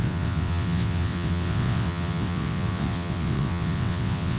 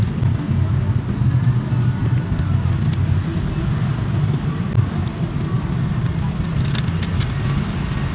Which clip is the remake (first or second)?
first